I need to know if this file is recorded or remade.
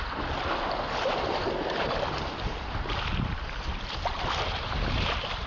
recorded